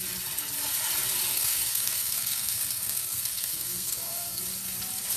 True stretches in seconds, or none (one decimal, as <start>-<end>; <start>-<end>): 0.0-1.3; 4.4-5.2